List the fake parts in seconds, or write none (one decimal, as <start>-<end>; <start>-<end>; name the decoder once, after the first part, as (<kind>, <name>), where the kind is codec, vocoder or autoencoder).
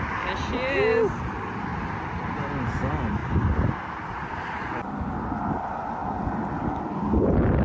1.7-2.3 (vocoder, BigVGAN v2); 3.2-4.1; 6.0-6.9